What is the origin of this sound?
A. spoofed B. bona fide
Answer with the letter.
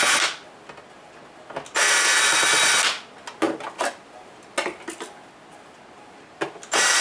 B